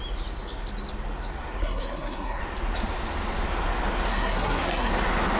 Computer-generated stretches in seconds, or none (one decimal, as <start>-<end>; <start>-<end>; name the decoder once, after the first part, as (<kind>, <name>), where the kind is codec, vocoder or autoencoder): 1.6-2.4 (codec, SNAC); 4.1-4.9